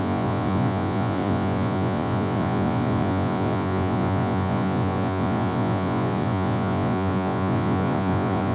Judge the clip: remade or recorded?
remade